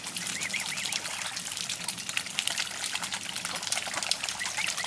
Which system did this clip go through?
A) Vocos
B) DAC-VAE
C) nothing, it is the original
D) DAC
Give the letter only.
C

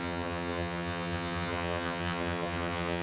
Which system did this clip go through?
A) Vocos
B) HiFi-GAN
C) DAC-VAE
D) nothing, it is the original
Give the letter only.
B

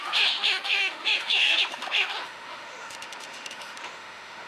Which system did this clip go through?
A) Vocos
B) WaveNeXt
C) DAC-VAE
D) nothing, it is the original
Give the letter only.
C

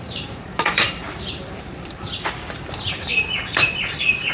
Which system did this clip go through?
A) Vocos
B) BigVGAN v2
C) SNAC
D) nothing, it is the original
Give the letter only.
B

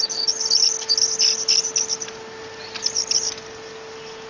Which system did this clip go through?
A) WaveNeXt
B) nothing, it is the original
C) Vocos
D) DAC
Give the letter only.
B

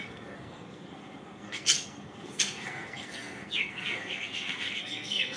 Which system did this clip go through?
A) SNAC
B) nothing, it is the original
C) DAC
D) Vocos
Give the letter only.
A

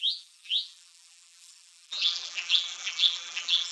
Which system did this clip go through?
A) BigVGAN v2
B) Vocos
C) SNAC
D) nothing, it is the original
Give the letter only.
A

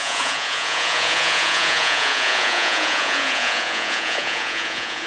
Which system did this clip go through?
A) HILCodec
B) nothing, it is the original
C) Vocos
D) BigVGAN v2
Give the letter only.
C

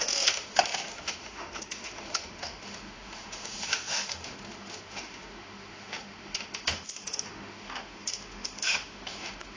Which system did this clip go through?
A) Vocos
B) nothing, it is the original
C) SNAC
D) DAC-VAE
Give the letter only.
D